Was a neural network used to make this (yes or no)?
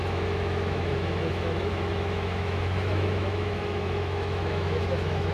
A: yes